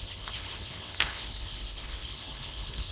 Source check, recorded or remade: remade